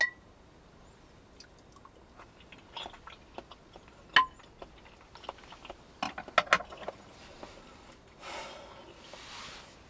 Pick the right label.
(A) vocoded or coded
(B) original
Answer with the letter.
B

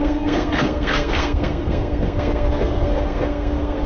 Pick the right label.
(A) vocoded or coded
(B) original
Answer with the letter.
A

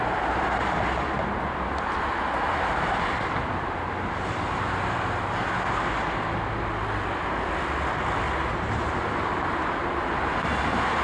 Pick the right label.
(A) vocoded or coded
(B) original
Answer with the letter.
B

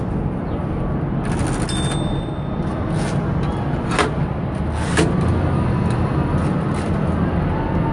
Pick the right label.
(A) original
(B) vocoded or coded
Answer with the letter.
A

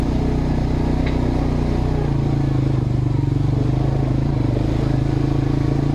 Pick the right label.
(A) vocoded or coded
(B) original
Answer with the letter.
B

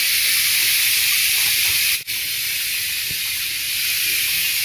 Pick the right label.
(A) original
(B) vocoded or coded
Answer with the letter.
A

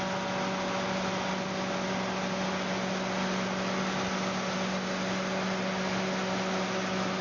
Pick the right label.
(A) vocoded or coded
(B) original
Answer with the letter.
B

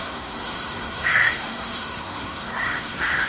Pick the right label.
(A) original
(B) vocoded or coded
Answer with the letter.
B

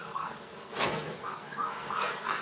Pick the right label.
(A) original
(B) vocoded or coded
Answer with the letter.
B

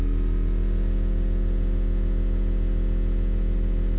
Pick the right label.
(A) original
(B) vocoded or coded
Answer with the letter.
A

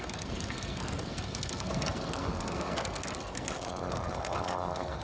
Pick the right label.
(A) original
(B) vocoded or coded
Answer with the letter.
B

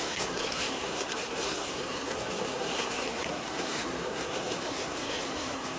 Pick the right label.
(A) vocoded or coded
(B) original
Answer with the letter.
A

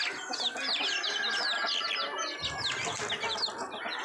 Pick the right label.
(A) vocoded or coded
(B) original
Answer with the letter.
B